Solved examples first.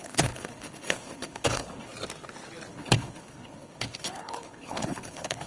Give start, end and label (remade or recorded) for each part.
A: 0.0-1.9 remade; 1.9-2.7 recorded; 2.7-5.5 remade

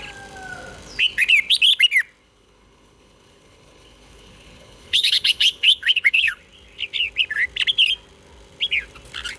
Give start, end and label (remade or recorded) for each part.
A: 0.0-2.2 recorded; 2.2-6.4 remade; 6.4-9.4 recorded

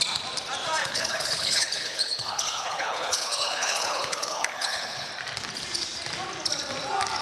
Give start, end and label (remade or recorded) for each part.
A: 0.0-0.8 recorded; 0.8-5.1 remade; 5.1-7.2 recorded